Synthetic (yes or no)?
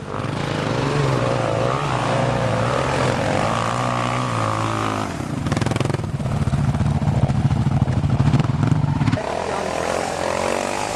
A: no